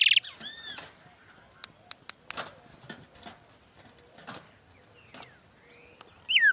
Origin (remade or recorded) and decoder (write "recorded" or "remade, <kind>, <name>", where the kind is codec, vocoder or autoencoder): recorded